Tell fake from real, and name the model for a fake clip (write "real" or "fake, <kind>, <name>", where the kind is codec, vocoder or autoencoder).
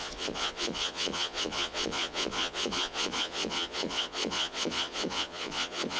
fake, vocoder, Vocos